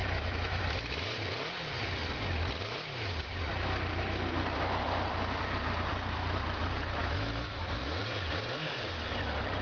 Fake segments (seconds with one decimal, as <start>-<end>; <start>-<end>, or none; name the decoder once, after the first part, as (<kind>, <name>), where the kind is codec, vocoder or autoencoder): 0.0-0.6 (autoencoder, DAC-VAE); 7.0-8.0